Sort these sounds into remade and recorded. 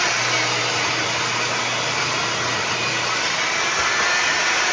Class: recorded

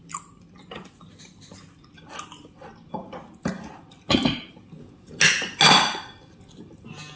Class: recorded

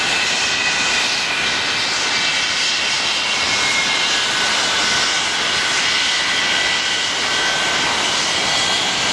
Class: recorded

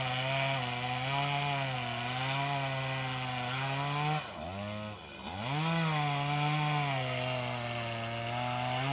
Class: recorded